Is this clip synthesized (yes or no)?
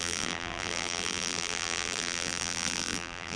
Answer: yes